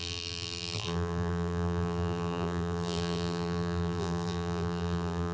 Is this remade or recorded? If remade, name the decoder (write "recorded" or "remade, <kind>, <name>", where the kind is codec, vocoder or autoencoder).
remade, vocoder, BigVGAN v2